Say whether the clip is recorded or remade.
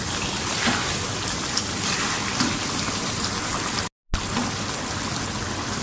recorded